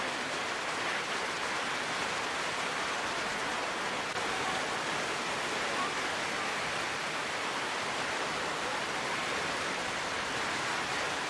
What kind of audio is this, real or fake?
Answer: real